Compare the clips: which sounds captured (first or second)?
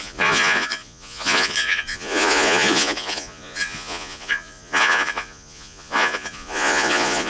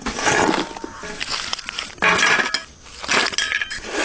second